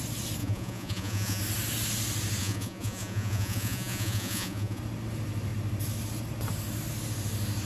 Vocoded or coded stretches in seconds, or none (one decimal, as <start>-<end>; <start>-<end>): 0.4-1.4; 2.4-4.8